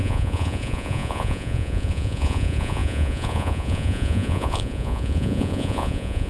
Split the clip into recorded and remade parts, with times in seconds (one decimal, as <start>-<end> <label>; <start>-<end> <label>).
0.0-6.3 remade